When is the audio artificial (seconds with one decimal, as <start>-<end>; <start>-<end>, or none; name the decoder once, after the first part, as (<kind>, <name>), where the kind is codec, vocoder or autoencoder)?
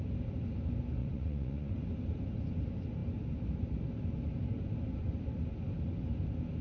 1.0-1.7 (vocoder, Vocos)